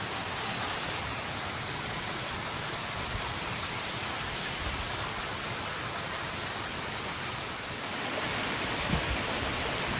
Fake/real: real